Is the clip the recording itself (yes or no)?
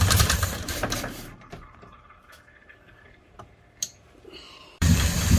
no